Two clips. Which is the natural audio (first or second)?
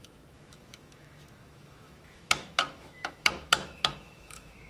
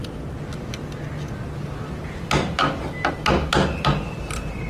second